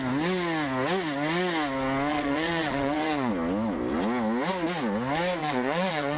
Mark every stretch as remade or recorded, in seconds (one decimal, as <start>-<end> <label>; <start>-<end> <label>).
0.0-2.1 recorded; 2.1-3.3 remade; 3.3-5.4 recorded; 5.4-6.2 remade